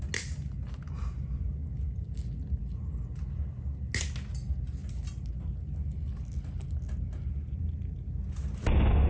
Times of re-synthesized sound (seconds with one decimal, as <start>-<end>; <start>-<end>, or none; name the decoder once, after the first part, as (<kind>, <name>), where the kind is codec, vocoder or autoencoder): none